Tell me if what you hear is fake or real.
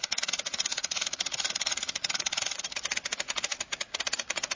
fake